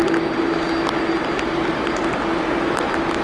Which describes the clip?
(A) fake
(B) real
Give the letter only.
B